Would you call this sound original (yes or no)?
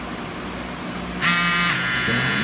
yes